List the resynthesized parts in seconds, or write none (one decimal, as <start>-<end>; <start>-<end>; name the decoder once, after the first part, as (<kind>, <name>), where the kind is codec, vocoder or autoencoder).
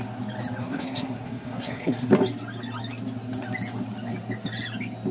0.6-2.1 (codec, SNAC)